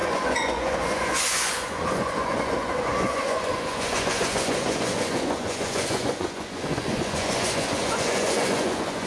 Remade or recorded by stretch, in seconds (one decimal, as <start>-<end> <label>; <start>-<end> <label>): 0.0-9.1 remade